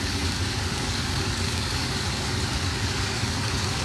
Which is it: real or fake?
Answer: fake